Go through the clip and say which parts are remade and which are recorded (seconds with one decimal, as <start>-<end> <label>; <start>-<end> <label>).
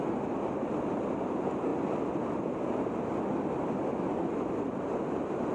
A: 0.0-5.5 recorded